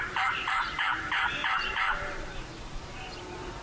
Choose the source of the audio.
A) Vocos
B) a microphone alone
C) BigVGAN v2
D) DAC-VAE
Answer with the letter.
C